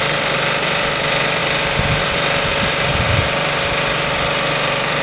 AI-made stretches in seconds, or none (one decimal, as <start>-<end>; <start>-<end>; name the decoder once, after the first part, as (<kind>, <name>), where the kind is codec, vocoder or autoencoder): 0.0-1.4 (vocoder, BigVGAN v2); 2.0-5.0